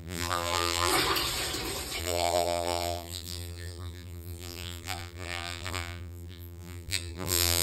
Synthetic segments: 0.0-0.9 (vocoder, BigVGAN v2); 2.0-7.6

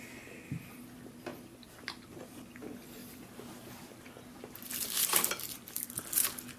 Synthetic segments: 1.3-2.1 (vocoder, BigVGAN v2); 3.0-4.7

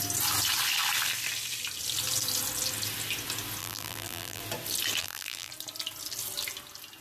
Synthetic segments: 3.6-4.4 (vocoder, BigVGAN v2); 5.0-5.5

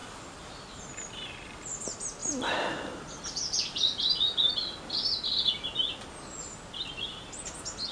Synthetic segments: 0.0-0.8 (vocoder, BigVGAN v2); 2.2-4.5